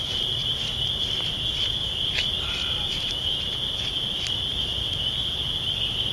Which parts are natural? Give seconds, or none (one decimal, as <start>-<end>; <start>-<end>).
0.0-6.1

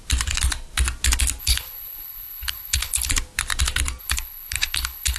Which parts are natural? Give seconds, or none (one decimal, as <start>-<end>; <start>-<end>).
0.0-1.4; 3.1-4.0

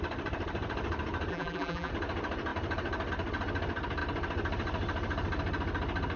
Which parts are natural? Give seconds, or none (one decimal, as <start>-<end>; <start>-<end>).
0.0-1.3; 1.9-6.2

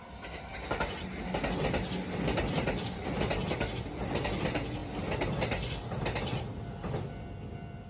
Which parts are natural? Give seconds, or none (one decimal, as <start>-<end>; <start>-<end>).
0.0-7.9

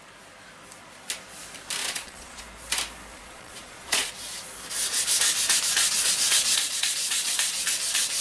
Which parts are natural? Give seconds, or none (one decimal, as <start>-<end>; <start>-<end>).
0.0-1.8; 2.4-3.1; 4.1-5.8; 7.6-8.2

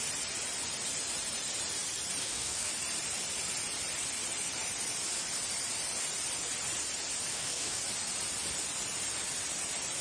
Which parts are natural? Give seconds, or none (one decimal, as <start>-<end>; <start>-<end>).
0.0-2.2; 2.7-7.3; 7.8-10.0

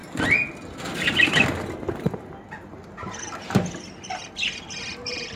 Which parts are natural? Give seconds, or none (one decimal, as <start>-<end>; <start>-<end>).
0.0-5.4

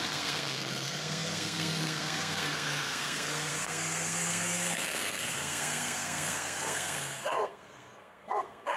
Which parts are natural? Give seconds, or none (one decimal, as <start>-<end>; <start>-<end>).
none